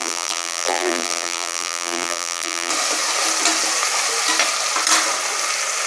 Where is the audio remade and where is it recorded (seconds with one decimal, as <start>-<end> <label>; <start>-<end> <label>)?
0.0-2.7 remade; 2.7-5.9 recorded